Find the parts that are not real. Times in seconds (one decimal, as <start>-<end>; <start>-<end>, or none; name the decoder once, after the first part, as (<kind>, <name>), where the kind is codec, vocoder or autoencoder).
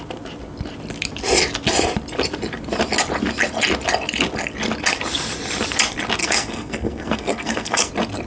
6.2-7.9 (codec, SNAC)